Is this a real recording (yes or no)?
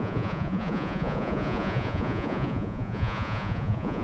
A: no